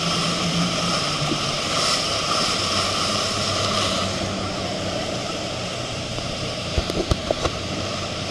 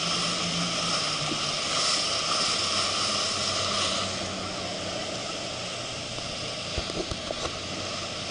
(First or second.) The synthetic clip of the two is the first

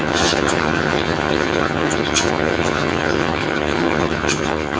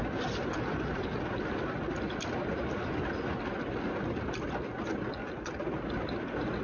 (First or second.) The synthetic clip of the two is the first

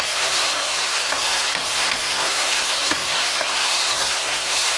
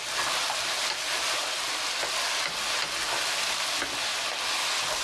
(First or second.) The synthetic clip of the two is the first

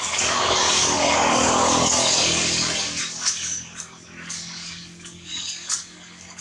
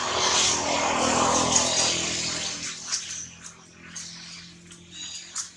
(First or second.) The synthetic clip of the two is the first